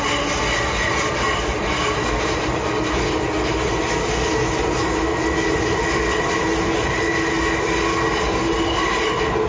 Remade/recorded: recorded